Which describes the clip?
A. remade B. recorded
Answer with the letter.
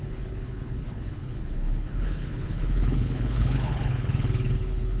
A